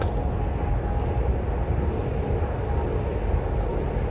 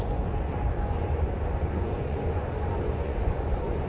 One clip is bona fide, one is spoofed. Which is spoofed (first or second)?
second